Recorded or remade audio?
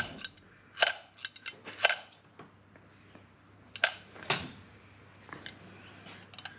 recorded